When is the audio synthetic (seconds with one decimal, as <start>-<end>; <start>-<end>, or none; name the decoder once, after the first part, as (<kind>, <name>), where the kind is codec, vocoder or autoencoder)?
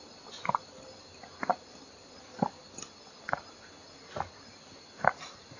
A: none